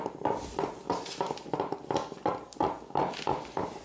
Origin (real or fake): real